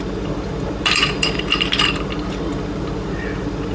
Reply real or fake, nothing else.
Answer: fake